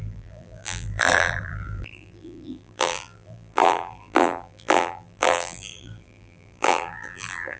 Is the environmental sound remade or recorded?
remade